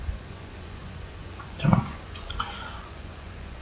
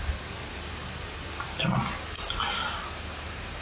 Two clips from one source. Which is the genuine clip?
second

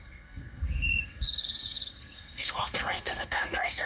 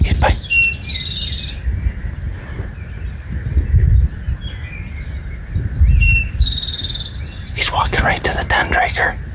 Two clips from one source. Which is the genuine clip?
second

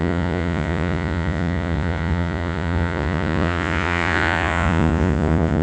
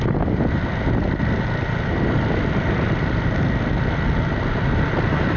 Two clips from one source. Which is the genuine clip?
second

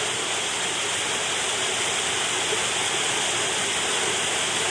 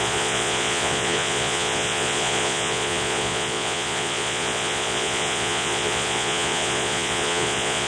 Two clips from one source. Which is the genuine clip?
first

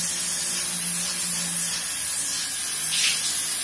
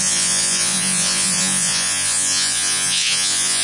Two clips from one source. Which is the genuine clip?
first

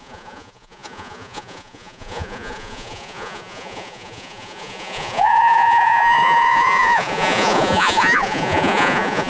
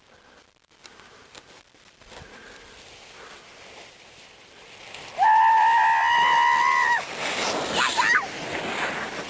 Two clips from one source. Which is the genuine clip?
second